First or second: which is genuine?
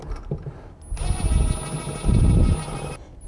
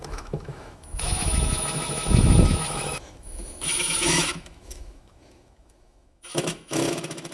first